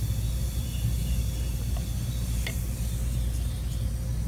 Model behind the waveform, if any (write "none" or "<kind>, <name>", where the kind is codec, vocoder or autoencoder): none